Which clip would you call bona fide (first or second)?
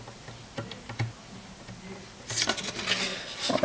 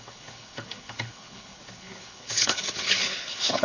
first